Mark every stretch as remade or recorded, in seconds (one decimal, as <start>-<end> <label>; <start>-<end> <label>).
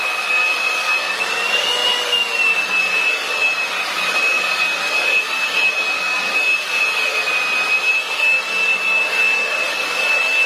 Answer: 0.0-7.2 remade; 7.2-8.1 recorded; 8.1-10.5 remade